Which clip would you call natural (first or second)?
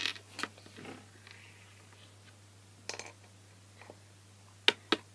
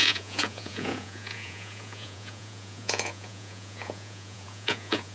first